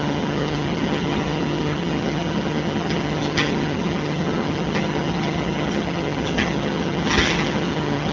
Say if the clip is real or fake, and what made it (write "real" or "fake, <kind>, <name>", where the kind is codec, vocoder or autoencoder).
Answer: fake, vocoder, HiFi-GAN